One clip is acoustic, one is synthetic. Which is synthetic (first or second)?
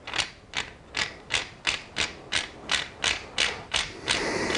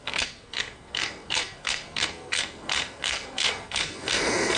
second